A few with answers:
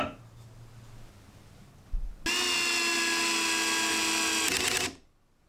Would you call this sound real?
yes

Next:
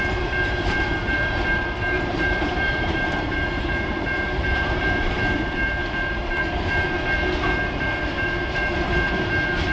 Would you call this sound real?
no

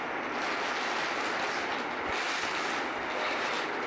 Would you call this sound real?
yes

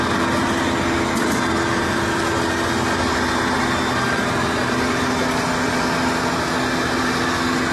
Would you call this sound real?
yes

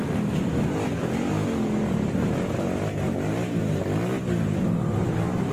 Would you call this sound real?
yes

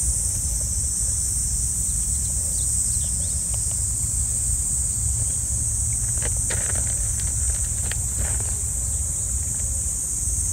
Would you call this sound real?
yes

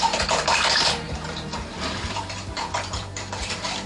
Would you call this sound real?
no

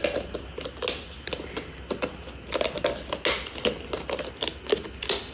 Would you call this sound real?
yes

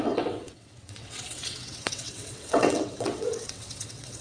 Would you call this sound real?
no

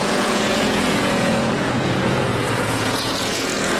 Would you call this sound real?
no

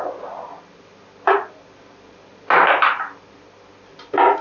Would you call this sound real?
yes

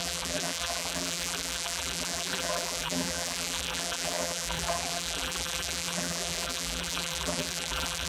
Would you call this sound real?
no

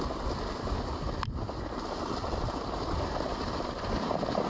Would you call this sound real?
yes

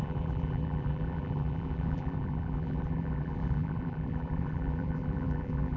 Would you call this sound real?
no